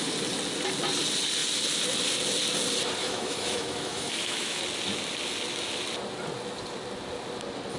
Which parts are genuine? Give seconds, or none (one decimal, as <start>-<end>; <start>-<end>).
0.0-3.0; 4.6-7.8